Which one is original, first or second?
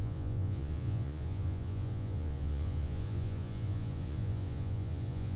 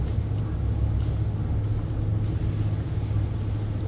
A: second